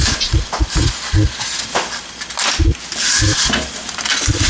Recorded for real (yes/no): yes